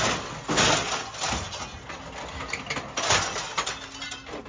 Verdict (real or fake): real